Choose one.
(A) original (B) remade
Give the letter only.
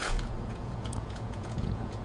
B